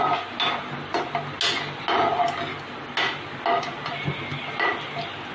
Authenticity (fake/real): real